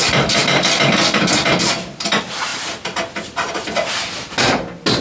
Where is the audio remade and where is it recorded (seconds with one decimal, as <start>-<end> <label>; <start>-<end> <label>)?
0.0-5.0 recorded

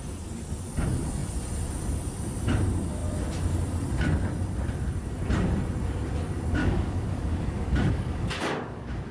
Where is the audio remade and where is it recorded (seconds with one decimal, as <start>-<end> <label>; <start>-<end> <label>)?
0.0-6.6 recorded; 6.6-9.1 remade

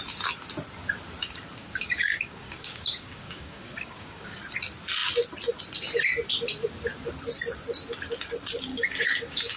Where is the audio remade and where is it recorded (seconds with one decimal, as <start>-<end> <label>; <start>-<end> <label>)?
0.0-1.6 recorded; 1.6-4.4 remade; 4.4-8.7 recorded; 8.7-9.6 remade

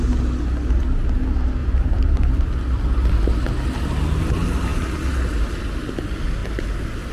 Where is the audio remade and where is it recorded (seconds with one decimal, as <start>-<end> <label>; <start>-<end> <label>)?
0.0-1.6 recorded; 1.6-2.4 remade; 2.4-6.4 recorded; 6.4-7.1 remade